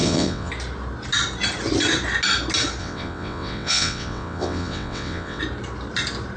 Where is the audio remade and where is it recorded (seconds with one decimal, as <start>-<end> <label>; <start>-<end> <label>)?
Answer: 0.0-0.5 remade; 0.5-2.8 recorded; 2.8-5.4 remade; 5.4-6.4 recorded